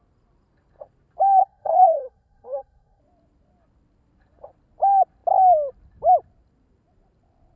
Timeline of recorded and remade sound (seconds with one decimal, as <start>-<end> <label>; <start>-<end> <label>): 0.0-1.4 recorded; 1.4-3.0 remade; 3.0-7.6 recorded